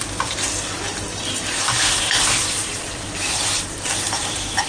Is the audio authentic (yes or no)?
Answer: no